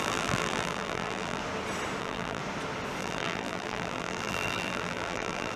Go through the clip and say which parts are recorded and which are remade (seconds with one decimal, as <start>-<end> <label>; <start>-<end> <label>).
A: 0.0-1.4 remade; 1.4-2.0 recorded; 2.0-2.4 remade; 2.4-3.0 recorded; 3.0-5.6 remade